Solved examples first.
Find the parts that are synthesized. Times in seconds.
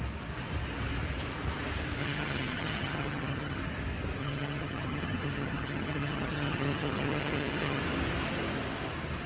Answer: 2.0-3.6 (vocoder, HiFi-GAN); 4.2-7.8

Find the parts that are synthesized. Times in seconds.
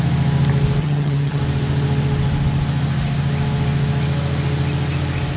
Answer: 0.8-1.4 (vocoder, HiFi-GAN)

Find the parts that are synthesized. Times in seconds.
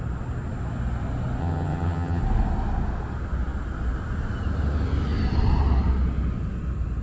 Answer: 1.4-2.2 (vocoder, HiFi-GAN)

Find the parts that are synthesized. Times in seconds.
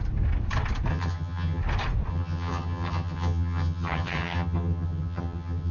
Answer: 0.9-1.6 (vocoder, HiFi-GAN); 2.1-5.7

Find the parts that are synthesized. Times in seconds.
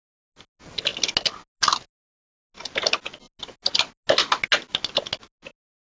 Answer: none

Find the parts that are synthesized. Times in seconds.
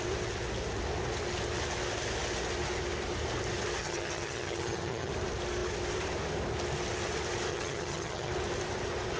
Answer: 3.8-5.1 (vocoder, HiFi-GAN); 7.5-8.3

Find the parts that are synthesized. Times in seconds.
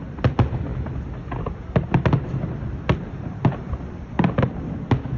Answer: none